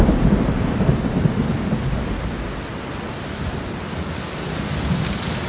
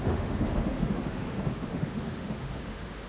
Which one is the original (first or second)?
first